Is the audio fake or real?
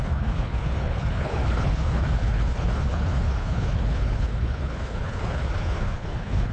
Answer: fake